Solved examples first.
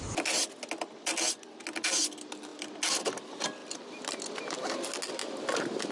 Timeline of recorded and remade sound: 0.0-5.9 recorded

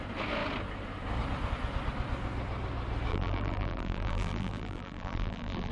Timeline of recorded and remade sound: 0.0-3.1 recorded; 3.1-5.7 remade